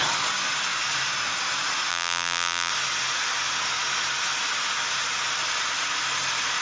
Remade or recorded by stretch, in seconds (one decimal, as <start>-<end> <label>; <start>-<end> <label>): 0.0-1.9 recorded; 1.9-2.7 remade; 2.7-6.6 recorded